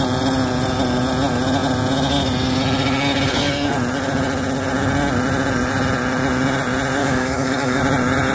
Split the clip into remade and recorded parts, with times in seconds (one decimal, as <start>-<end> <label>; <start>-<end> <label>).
0.0-7.0 recorded; 7.0-7.8 remade; 7.8-8.3 recorded